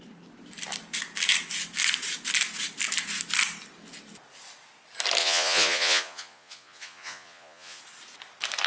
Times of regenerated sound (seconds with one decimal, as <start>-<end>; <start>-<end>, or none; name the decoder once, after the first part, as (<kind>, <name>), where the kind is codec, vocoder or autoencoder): 5.2-7.8 (vocoder, Vocos)